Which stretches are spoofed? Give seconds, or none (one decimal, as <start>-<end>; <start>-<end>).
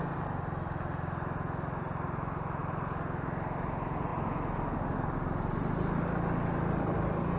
none